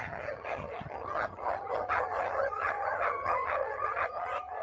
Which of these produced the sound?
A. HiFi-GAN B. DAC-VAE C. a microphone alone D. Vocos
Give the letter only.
A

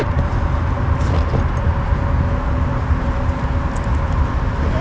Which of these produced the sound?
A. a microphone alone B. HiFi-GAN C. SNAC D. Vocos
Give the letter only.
A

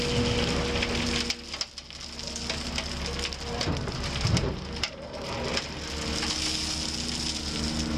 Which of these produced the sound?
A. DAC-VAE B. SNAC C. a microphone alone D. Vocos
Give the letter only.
C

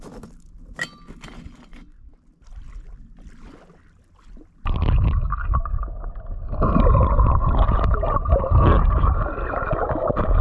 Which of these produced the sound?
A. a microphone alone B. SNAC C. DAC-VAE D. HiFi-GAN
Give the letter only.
A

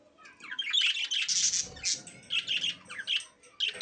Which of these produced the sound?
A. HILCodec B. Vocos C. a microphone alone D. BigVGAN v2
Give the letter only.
C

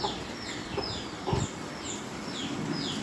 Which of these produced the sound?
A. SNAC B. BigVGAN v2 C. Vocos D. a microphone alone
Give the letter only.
D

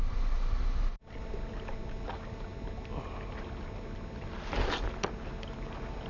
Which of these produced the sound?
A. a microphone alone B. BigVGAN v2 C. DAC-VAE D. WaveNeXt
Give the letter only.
A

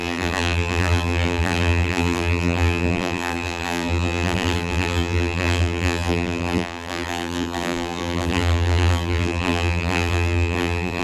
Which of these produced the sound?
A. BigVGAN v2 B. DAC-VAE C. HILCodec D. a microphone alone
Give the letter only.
A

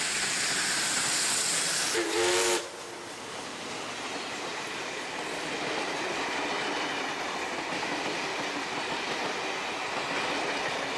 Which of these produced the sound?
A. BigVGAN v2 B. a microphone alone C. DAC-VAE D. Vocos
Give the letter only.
B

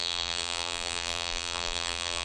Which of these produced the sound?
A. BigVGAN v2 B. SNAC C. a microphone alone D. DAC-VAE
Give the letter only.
A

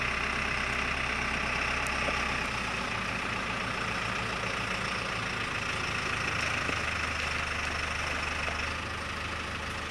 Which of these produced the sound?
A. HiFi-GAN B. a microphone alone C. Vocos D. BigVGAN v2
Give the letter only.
B